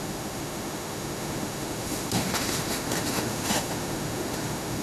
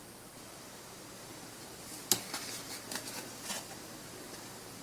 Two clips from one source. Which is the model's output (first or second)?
first